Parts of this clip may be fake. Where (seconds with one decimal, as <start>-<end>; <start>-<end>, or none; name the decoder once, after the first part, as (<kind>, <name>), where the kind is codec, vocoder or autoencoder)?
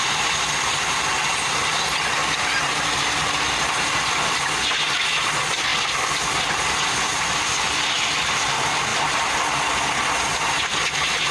none